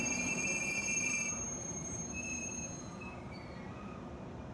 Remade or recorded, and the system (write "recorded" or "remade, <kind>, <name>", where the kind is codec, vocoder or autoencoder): remade, vocoder, BigVGAN v2